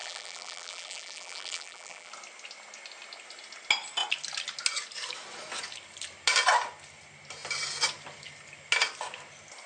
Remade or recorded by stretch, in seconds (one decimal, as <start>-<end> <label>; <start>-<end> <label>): 0.0-2.1 remade; 2.1-9.7 recorded